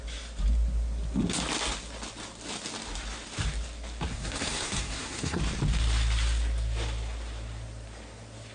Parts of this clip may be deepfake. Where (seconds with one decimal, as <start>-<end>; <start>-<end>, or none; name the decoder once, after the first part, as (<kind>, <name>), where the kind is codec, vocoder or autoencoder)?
4.1-5.4 (codec, SNAC)